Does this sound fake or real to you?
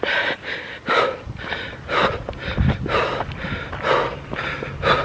real